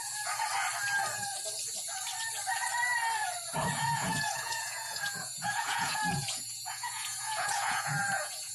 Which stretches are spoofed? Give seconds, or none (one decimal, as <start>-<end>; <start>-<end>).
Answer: 0.0-0.5; 3.8-8.5